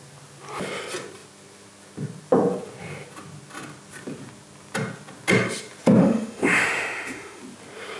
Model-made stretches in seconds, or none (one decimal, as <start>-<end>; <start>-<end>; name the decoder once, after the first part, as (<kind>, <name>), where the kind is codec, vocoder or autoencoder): 6.0-7.4 (autoencoder, DAC-VAE)